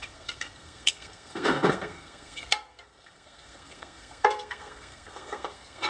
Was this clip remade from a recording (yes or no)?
yes